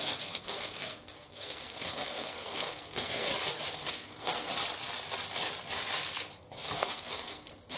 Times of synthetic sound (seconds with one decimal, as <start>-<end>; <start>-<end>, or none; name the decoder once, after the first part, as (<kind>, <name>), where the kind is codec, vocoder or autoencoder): 0.0-3.3 (codec, SNAC); 3.9-4.5; 6.8-7.8

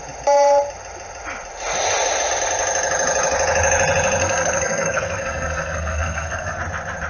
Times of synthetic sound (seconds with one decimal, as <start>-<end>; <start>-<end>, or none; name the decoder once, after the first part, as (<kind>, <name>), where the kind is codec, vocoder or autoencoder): 4.2-6.6 (codec, SNAC)